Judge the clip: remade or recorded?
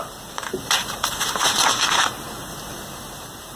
remade